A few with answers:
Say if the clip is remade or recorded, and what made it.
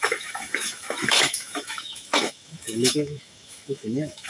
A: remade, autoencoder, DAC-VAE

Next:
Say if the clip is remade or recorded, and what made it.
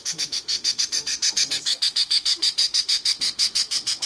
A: remade, autoencoder, DAC-VAE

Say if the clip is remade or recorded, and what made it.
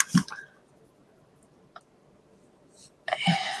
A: recorded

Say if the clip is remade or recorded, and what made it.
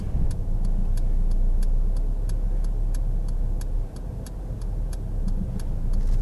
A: recorded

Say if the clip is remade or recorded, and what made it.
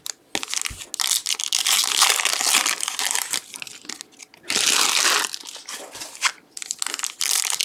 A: recorded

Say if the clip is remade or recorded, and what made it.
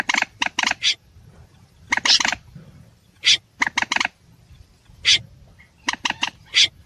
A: recorded